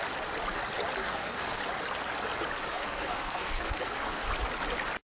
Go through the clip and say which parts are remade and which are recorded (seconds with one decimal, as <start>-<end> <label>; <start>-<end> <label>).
0.0-1.0 recorded; 1.0-1.6 remade; 1.6-2.7 recorded; 2.7-4.3 remade; 4.3-5.1 recorded